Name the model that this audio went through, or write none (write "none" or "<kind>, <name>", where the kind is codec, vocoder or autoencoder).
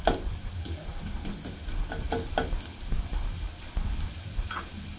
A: none